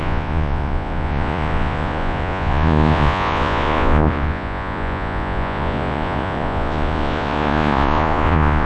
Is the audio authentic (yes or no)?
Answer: no